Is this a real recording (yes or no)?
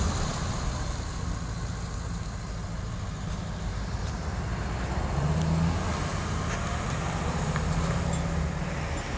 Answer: yes